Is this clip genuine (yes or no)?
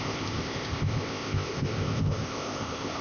no